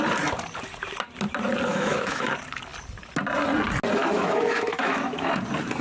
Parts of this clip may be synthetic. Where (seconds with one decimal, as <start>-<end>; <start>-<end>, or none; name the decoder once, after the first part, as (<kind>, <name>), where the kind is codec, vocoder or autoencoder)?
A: 1.7-2.3 (autoencoder, DAC-VAE); 4.0-5.3